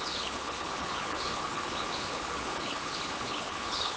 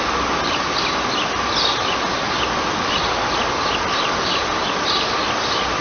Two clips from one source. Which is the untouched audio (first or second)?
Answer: second